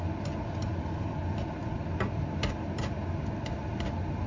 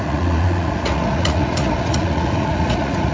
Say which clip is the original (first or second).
first